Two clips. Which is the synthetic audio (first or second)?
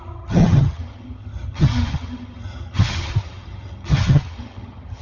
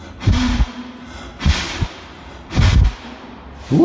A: first